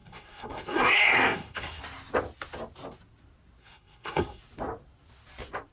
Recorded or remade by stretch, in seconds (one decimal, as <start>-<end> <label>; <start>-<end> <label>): 0.0-1.8 remade; 1.8-3.6 recorded; 3.6-4.4 remade; 4.4-5.7 recorded